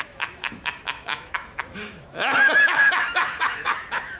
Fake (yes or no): yes